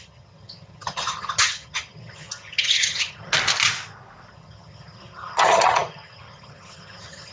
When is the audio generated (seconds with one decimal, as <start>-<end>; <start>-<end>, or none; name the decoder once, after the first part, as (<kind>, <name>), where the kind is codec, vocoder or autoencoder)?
0.0-3.3 (vocoder, HiFi-GAN); 4.3-7.3